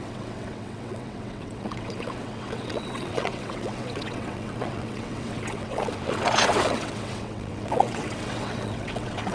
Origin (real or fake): fake